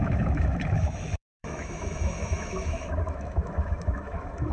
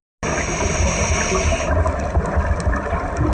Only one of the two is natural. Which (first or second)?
second